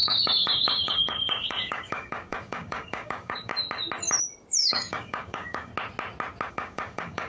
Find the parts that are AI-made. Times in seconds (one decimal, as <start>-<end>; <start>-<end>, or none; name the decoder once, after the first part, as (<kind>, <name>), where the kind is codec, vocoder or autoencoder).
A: 0.0-3.5 (codec, DAC); 4.7-5.7; 6.5-7.3